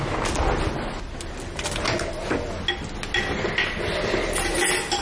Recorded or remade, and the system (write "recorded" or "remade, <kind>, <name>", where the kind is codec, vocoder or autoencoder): recorded